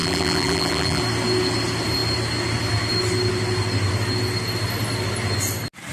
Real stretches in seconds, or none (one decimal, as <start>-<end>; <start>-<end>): 1.0-5.9